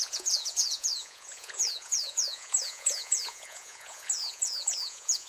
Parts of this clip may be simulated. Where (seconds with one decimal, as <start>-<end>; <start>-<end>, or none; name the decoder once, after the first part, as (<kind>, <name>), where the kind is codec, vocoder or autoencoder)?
0.0-5.3 (vocoder, Vocos)

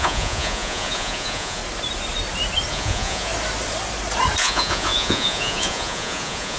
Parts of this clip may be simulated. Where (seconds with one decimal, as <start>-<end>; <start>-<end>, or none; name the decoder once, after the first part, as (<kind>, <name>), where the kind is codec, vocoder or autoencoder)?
0.0-1.6 (vocoder, Vocos); 2.7-3.3; 4.4-6.6

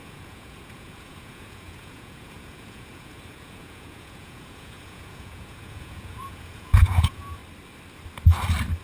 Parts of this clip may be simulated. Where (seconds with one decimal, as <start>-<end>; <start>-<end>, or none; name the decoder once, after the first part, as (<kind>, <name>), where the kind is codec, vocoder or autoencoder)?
0.0-7.4 (vocoder, Vocos)